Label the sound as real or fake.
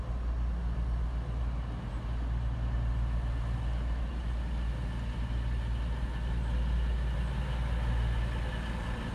real